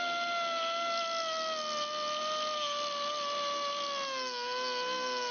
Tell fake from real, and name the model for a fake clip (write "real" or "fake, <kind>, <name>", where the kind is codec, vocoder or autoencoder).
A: real